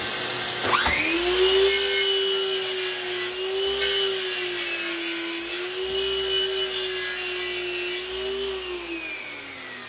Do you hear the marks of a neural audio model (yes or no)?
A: no